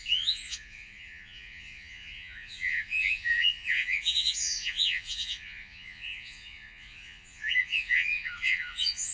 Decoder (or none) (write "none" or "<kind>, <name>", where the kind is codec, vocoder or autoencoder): vocoder, Vocos